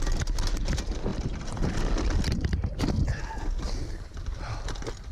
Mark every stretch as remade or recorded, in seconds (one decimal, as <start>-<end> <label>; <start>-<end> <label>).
0.0-1.1 recorded; 1.1-3.2 remade; 3.2-5.1 recorded

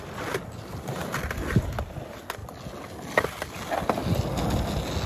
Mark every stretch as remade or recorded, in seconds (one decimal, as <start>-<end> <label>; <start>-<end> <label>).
0.0-5.1 recorded

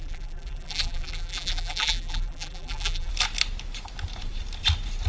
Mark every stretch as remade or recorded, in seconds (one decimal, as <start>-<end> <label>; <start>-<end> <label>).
0.0-3.1 remade; 3.1-5.1 recorded

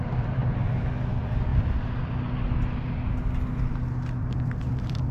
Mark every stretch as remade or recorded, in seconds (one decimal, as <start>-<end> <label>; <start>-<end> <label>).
0.0-0.4 remade; 0.4-1.1 recorded; 1.1-1.5 remade; 1.5-4.2 recorded; 4.2-5.1 remade